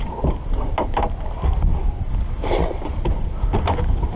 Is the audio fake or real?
real